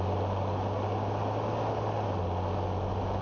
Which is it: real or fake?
real